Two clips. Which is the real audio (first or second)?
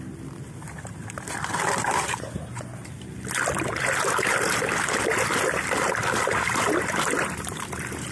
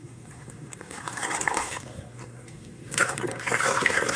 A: first